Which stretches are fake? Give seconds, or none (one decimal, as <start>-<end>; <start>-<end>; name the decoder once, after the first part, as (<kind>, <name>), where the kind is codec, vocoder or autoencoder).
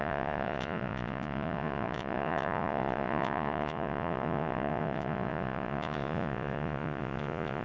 0.0-7.6 (vocoder, Vocos)